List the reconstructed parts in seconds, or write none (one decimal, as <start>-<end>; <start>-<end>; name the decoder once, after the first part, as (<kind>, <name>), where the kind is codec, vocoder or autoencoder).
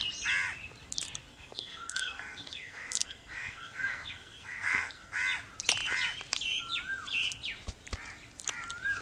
1.3-5.1 (codec, SNAC)